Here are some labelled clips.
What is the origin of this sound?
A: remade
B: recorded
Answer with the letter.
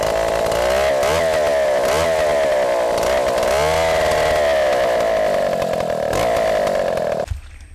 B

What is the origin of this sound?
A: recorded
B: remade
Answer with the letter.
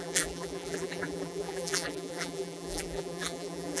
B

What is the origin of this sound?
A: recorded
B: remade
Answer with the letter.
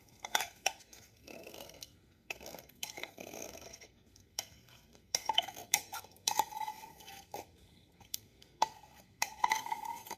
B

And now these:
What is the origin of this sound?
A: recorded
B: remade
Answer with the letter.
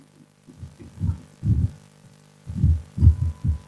A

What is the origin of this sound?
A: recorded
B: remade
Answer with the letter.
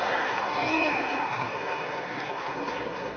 B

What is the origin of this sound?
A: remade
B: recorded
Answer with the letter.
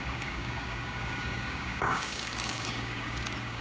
A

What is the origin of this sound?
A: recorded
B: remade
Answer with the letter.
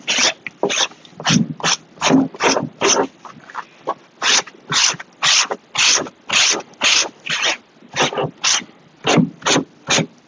A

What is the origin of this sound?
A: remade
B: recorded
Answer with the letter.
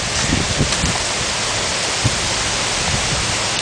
B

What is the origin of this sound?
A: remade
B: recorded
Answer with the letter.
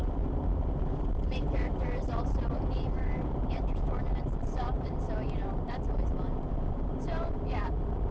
A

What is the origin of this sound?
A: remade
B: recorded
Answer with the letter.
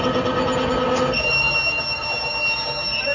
B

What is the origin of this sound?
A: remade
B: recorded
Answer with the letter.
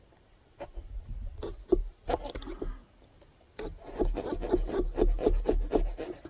B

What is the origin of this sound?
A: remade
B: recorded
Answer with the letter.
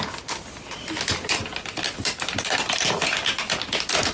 B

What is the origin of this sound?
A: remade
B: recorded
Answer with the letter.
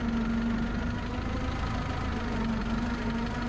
B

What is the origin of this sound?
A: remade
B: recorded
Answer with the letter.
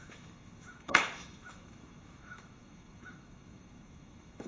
A